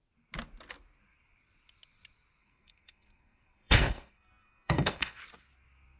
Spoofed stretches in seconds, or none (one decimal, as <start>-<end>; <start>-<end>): 2.4-5.2

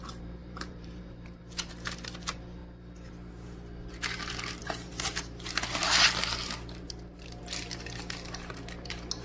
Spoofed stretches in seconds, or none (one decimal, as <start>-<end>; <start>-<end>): 0.4-1.4

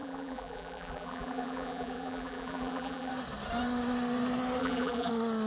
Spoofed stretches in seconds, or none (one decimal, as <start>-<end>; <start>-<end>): 0.0-3.1; 4.6-5.1

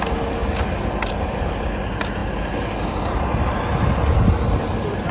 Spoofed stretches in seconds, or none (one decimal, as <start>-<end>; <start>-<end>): none

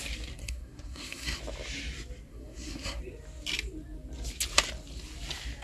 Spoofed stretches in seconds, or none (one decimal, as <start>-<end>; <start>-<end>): 0.4-1.4; 2.3-3.0

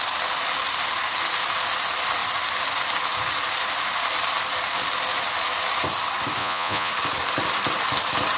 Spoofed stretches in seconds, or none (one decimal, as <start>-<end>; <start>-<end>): 6.4-6.9